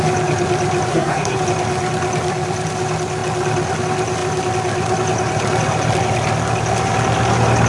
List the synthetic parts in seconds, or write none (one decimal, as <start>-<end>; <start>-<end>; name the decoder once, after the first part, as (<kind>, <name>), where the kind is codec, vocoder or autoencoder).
0.9-1.4 (codec, SNAC)